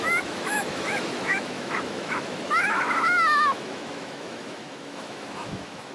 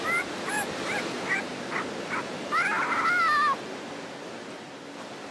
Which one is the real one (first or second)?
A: second